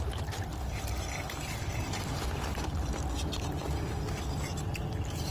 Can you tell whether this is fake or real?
real